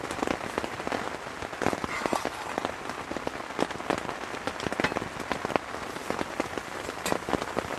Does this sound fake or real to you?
real